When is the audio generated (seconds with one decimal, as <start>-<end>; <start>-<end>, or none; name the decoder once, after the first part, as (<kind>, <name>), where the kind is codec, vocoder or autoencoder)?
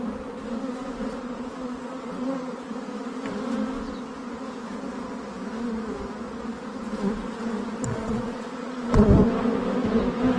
1.2-2.7 (vocoder, Vocos); 7.9-9.0